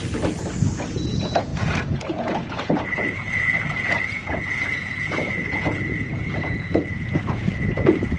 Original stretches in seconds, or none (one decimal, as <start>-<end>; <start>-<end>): 0.0-0.9